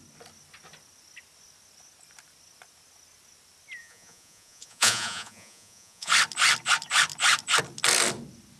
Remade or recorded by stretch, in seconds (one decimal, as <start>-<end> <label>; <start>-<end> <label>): 0.0-3.8 recorded; 3.8-6.1 remade; 6.1-8.6 recorded